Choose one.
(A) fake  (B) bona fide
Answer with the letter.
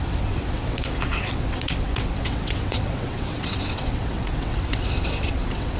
A